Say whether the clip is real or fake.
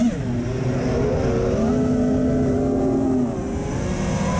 real